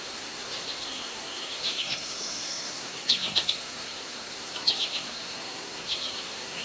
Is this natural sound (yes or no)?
no